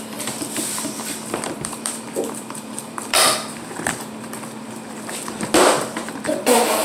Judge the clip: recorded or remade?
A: remade